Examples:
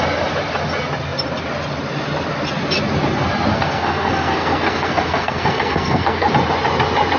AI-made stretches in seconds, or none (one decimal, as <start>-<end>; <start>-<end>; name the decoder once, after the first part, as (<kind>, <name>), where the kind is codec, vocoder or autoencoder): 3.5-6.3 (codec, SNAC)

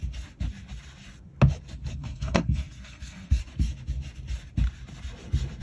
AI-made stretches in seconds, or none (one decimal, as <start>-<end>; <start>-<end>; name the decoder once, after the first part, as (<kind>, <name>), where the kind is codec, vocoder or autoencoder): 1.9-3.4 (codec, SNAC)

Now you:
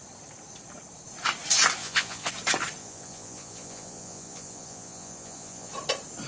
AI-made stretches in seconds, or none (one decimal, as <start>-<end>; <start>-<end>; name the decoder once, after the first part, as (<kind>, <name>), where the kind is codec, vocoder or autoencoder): 1.8-2.3 (vocoder, Vocos); 2.8-5.7

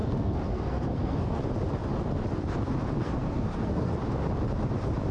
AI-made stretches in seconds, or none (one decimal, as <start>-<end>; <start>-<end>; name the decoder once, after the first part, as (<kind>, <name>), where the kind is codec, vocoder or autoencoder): 0.0-1.4 (codec, SNAC); 3.0-3.9